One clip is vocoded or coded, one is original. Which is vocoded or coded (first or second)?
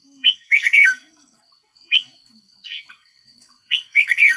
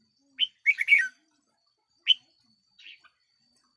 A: first